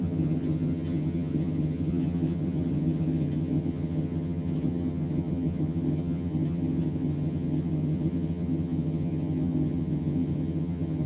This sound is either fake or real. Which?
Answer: fake